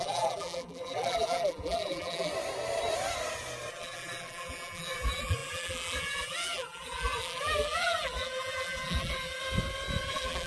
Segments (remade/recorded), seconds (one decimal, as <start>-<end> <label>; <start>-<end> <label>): 0.0-2.3 remade; 2.3-3.7 recorded; 3.7-9.4 remade; 9.4-10.1 recorded; 10.1-10.5 remade